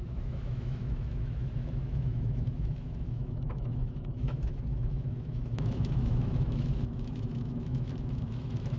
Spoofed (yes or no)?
yes